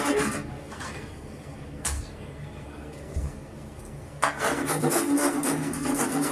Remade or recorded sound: remade